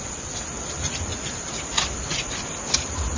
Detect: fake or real real